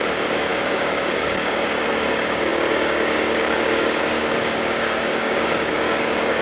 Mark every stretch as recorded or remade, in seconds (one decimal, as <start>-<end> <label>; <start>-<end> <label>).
0.0-6.4 remade